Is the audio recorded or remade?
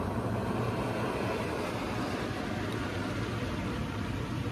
recorded